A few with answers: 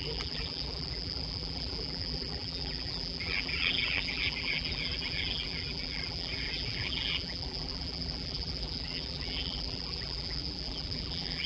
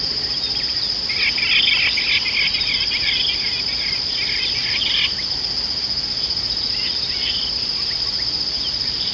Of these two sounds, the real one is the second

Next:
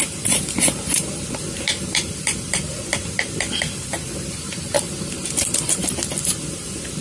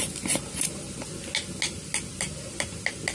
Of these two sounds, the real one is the second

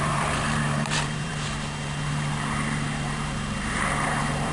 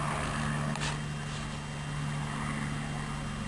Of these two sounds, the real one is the second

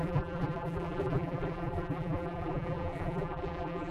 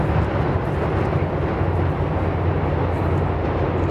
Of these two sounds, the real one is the second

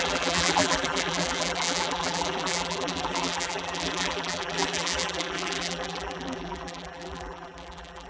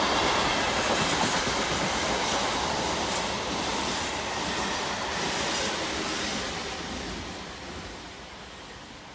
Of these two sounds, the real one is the second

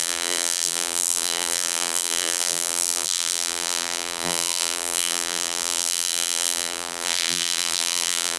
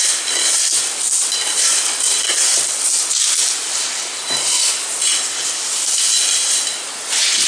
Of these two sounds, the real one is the second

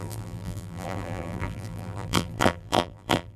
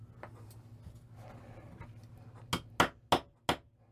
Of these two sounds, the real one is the second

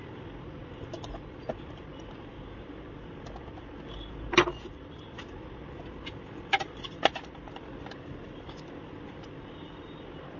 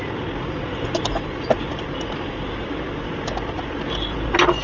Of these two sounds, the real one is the second